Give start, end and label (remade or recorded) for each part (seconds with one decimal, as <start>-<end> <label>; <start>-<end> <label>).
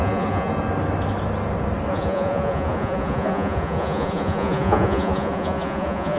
0.0-0.5 remade; 0.5-1.9 recorded; 1.9-6.2 remade